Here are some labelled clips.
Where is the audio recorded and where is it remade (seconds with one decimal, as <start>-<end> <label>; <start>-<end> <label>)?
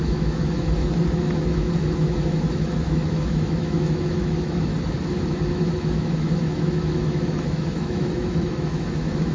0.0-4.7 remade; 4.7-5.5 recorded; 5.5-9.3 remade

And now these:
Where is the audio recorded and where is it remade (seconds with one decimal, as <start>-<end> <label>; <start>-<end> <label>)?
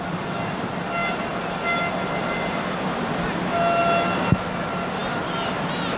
0.0-6.0 recorded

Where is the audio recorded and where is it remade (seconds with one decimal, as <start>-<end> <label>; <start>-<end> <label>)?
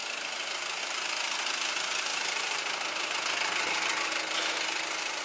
0.0-0.8 recorded; 0.8-2.1 remade; 2.1-5.2 recorded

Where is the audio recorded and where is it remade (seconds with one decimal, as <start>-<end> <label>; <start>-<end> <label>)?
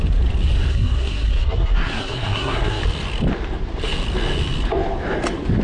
0.0-0.7 recorded; 0.7-2.8 remade; 2.8-5.6 recorded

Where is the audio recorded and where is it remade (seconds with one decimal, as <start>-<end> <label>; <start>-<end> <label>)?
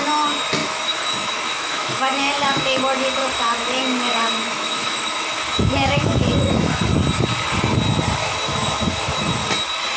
0.0-0.6 recorded; 0.6-2.8 remade; 2.8-3.2 recorded; 3.2-6.8 remade; 6.8-8.2 recorded; 8.2-9.2 remade; 9.2-10.0 recorded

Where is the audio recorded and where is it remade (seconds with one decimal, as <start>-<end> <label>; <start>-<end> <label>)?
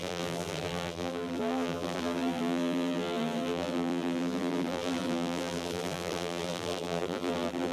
0.0-7.7 remade